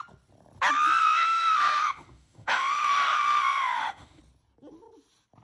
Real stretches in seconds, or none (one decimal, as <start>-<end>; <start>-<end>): 0.0-1.0; 4.2-5.4